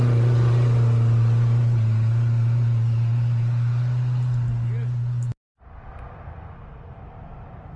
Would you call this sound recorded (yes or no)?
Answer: yes